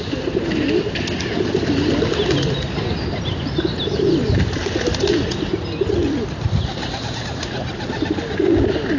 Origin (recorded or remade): recorded